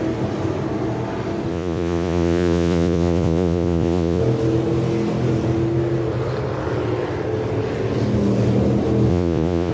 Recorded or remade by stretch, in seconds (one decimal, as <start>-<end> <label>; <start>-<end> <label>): 0.0-1.5 recorded; 1.5-4.2 remade; 4.2-9.1 recorded; 9.1-9.7 remade